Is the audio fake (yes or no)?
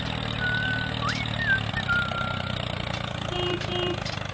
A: no